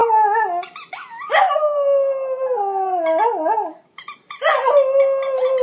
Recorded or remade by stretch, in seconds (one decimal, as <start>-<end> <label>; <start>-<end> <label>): 0.0-5.6 recorded